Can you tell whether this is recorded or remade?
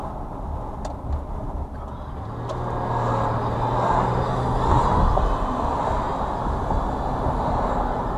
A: recorded